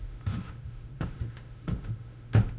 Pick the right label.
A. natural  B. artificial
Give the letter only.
B